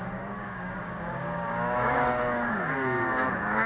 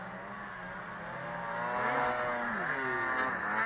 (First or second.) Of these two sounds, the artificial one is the first